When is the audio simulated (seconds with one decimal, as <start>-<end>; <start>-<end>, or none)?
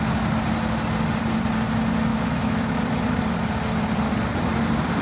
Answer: 2.1-2.8